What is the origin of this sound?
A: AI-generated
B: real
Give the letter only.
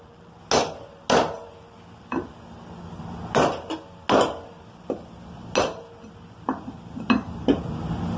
B